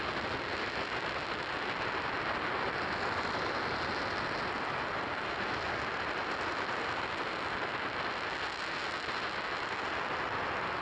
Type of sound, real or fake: real